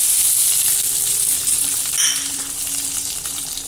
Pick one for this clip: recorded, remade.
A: remade